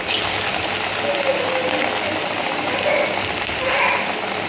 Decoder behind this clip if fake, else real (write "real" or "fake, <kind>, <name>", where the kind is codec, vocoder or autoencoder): real